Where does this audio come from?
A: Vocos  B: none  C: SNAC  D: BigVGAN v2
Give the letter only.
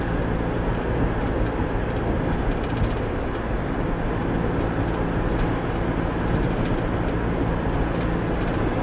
B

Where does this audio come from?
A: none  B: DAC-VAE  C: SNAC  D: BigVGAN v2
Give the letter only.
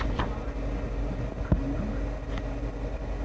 A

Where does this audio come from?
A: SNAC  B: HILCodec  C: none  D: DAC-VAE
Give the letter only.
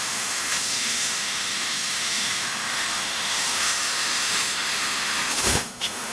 D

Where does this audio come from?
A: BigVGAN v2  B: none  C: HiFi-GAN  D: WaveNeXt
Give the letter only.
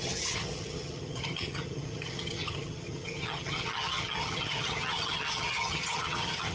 C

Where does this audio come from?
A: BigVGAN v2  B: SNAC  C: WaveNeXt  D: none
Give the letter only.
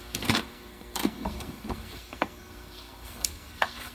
B